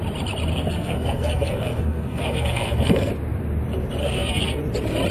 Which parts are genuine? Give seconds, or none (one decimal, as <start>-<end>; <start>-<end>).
0.0-0.5; 3.1-4.0; 4.6-5.1